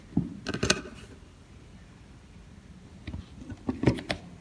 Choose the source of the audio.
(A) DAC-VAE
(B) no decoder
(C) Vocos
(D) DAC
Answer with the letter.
B